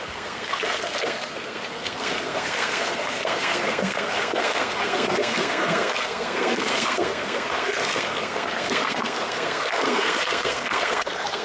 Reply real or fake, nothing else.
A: fake